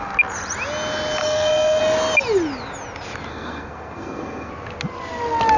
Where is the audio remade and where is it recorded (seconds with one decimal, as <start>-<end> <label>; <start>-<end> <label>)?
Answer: 0.0-1.2 recorded; 1.2-1.8 remade; 1.8-3.3 recorded; 3.3-4.5 remade; 4.5-5.6 recorded